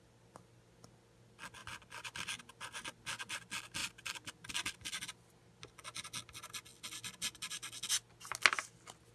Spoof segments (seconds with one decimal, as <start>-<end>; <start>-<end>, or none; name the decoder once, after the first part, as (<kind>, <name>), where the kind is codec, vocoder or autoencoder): none